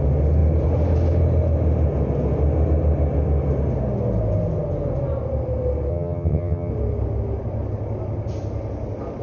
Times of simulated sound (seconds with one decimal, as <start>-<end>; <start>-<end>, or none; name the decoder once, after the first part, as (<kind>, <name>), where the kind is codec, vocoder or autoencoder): 5.9-6.7 (vocoder, HiFi-GAN)